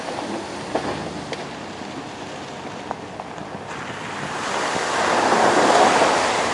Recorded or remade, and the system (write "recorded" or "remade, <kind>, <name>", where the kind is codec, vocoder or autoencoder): recorded